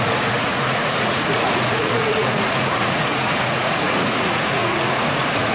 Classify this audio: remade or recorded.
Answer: remade